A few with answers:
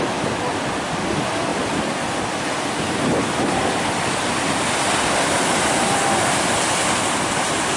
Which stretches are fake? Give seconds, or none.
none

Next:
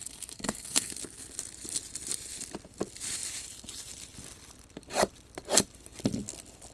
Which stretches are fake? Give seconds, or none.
0.0-0.9 (codec, SNAC)